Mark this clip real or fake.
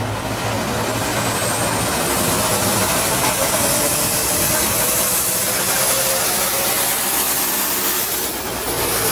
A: real